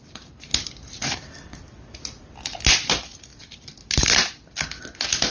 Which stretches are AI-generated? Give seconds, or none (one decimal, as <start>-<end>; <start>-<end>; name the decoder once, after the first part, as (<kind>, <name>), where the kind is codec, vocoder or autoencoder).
0.5-2.9 (vocoder, BigVGAN v2); 3.3-4.8

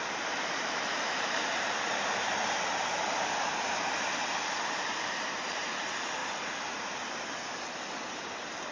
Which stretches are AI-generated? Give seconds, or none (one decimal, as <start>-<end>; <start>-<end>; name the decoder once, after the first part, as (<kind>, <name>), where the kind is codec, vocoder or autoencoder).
0.0-3.7 (vocoder, BigVGAN v2); 4.9-8.7

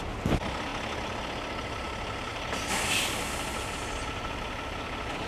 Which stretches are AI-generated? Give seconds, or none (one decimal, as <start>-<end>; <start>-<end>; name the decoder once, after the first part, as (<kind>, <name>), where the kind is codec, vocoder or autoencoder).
none

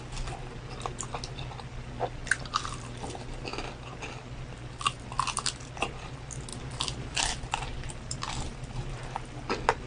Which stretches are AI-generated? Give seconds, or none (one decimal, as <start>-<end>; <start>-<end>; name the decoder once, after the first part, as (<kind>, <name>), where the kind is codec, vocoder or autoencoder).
2.2-2.7 (vocoder, BigVGAN v2); 6.5-7.3; 7.7-8.8

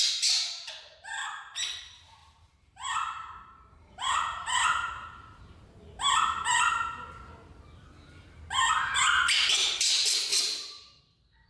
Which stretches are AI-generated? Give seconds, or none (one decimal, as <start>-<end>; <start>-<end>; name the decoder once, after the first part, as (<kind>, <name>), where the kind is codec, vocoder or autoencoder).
2.2-5.4 (vocoder, BigVGAN v2); 10.3-11.0

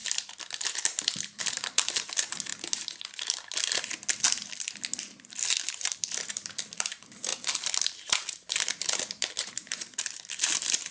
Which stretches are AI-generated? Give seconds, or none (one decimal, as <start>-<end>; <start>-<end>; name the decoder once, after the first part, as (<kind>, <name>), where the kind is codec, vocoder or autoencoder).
1.4-2.5 (vocoder, BigVGAN v2); 5.0-10.9

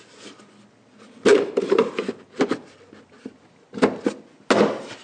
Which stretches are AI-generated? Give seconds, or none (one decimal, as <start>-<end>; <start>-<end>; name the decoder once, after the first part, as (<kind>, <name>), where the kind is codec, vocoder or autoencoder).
1.3-2.7 (vocoder, BigVGAN v2)